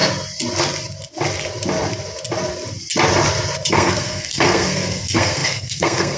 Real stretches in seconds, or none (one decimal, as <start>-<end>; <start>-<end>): 0.0-3.7